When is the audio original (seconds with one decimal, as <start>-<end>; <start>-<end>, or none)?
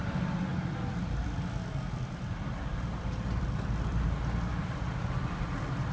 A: 0.0-0.5; 4.0-4.5; 5.4-5.9